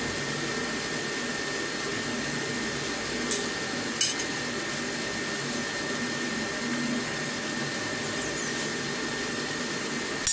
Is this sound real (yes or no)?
yes